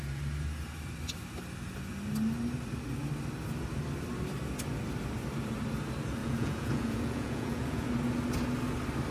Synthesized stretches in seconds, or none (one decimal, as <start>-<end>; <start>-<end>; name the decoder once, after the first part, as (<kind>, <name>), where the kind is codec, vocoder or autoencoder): 6.2-7.9 (vocoder, Vocos)